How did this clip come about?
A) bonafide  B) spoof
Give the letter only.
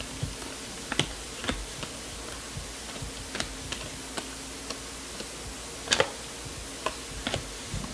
A